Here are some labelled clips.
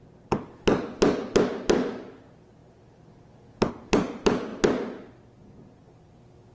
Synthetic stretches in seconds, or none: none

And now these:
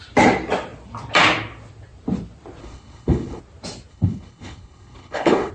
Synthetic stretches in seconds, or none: 2.6-3.4 (codec, HILCodec); 3.9-5.5

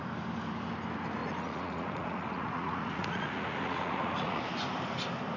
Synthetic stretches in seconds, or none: 1.2-4.4 (vocoder, Vocos)